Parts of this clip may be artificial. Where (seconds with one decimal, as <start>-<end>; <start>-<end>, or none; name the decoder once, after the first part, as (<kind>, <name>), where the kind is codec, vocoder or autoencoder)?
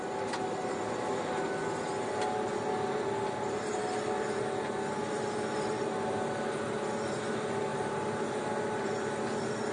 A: 7.7-8.5 (vocoder, BigVGAN v2)